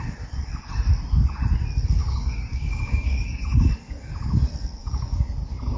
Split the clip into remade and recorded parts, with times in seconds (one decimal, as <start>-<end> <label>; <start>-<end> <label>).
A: 0.0-2.0 recorded; 2.0-3.7 remade; 3.7-4.8 recorded; 4.8-5.3 remade; 5.3-5.8 recorded